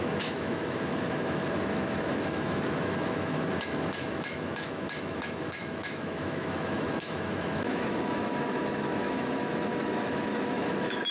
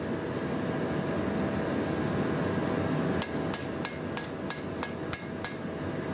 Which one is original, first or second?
second